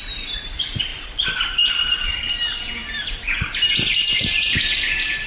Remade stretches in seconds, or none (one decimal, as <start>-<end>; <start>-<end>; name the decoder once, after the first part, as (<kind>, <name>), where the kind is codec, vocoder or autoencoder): 0.9-1.7 (vocoder, BigVGAN v2); 4.0-4.7